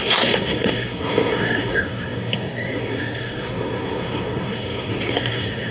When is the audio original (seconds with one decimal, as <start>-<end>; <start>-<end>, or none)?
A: none